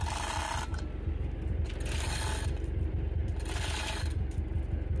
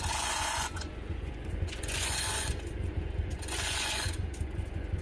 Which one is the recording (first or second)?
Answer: first